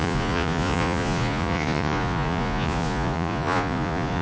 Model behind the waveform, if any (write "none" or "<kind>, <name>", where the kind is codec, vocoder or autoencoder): vocoder, Vocos